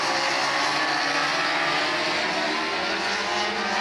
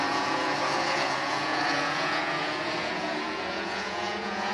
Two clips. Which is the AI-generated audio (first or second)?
second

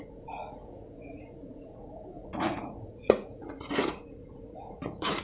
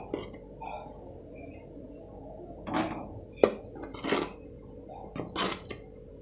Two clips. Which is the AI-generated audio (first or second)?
first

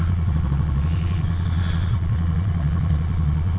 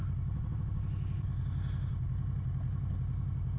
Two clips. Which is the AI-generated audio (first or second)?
first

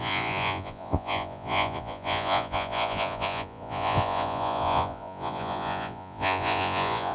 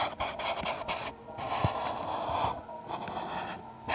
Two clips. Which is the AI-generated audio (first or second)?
first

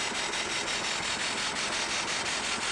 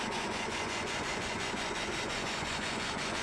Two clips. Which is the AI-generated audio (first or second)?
second